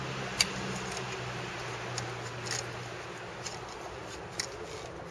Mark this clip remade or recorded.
recorded